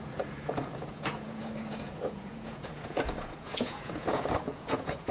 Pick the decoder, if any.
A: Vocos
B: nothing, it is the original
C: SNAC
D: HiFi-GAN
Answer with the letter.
A